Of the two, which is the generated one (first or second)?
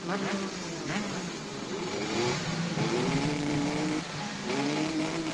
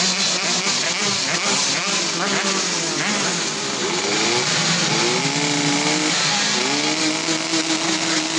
first